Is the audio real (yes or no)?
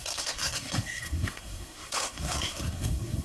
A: no